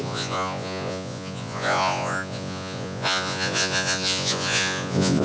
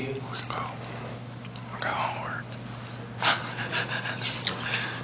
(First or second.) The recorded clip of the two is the second